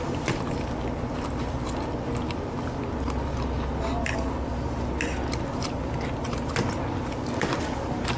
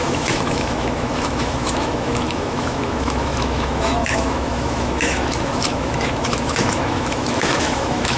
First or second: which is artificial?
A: second